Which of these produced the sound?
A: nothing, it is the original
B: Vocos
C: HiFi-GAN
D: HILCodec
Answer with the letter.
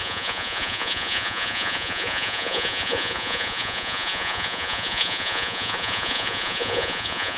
B